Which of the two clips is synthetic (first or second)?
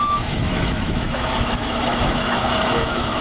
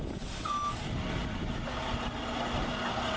first